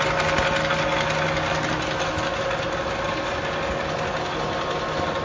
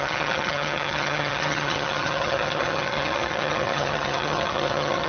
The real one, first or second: first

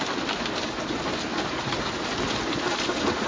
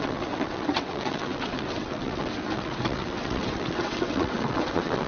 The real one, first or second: first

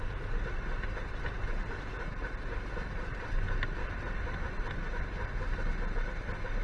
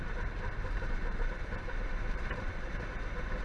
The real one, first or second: first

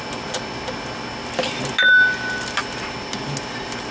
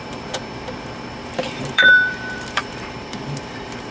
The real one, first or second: first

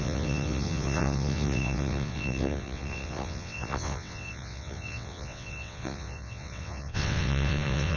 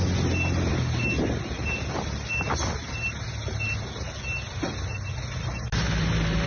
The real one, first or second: second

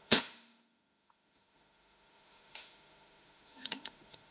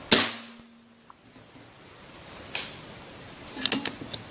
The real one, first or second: second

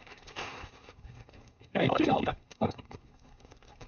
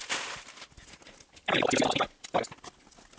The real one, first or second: second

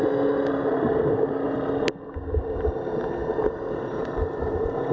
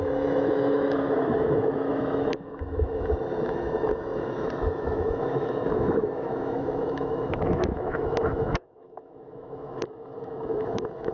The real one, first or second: first